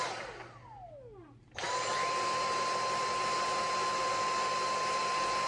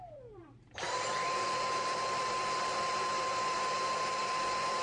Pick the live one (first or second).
first